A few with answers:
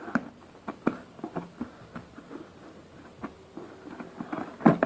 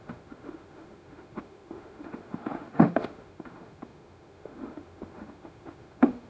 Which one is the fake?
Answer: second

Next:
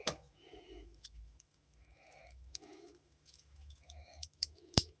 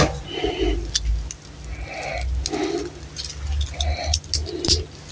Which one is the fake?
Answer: first